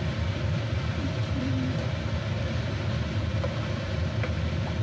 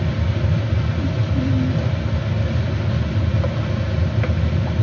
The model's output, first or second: first